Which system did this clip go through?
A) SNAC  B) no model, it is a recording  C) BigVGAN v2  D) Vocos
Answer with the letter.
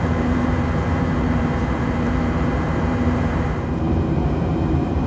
C